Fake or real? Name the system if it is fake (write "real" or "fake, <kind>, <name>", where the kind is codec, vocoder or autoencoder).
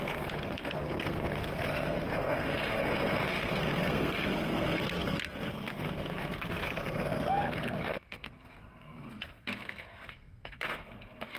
fake, codec, SNAC